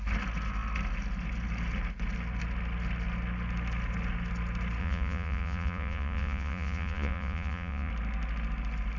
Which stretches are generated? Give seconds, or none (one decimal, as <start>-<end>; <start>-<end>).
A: 4.8-7.9